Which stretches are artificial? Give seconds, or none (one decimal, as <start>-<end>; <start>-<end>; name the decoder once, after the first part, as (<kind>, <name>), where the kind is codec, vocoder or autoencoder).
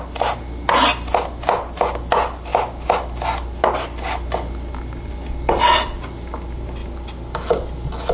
none